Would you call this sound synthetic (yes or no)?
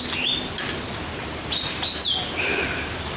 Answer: no